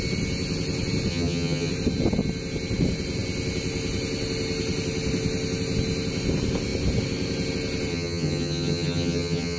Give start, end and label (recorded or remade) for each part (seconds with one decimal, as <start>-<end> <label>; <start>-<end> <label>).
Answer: 0.0-1.1 recorded; 1.1-1.7 remade; 1.7-7.9 recorded; 7.9-9.6 remade